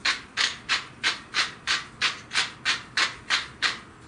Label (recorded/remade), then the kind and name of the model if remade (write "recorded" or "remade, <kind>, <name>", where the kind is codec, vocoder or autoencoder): recorded